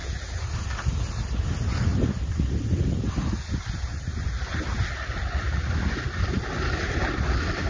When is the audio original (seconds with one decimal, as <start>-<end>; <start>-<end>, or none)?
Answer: 0.0-7.7